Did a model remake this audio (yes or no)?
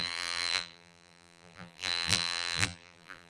yes